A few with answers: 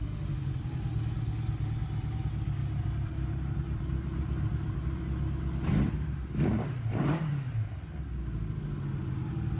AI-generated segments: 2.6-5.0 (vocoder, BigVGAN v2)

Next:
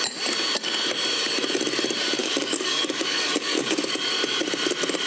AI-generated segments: 2.2-4.1 (codec, DAC)

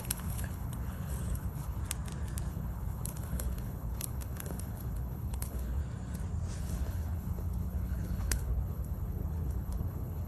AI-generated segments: 0.0-1.8 (codec, HILCodec); 2.5-5.8; 6.6-10.3

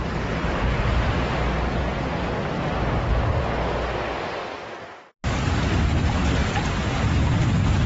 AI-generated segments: none

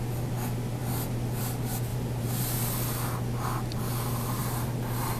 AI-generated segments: 1.9-2.4 (vocoder, BigVGAN v2)

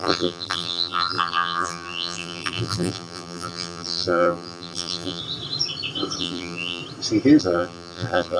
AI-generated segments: 0.0-5.2 (vocoder, BigVGAN v2); 6.2-6.8; 7.4-8.4